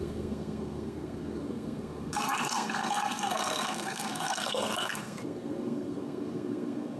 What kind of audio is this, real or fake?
fake